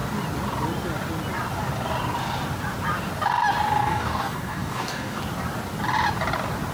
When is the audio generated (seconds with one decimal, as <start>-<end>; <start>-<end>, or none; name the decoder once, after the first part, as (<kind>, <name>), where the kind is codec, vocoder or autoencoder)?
3.8-5.2 (codec, DAC)